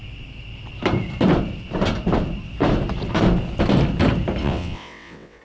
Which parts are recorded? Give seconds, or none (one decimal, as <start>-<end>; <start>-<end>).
0.0-4.4